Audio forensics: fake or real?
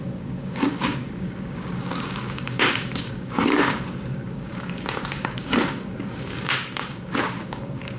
fake